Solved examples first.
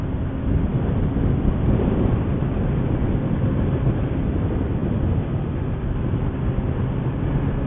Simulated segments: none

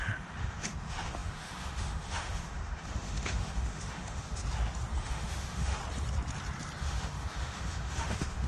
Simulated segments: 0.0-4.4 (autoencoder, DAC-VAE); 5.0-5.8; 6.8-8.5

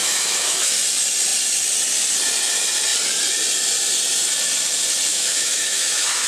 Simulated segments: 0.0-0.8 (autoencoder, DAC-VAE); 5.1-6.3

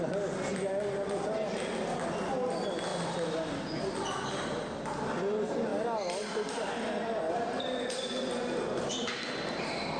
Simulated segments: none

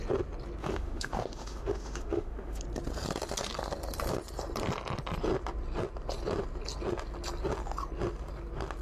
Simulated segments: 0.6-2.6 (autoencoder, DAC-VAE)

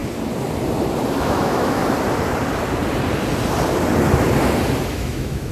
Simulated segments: 1.2-1.8 (autoencoder, DAC-VAE); 4.9-5.5